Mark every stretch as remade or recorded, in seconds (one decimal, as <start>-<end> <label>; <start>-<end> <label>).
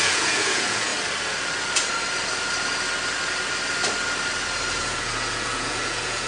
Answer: 0.0-0.9 remade; 0.9-4.7 recorded; 4.7-6.3 remade